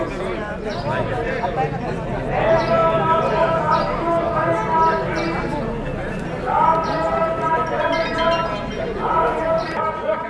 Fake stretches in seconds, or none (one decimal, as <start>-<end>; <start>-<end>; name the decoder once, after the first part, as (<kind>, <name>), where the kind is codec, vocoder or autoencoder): none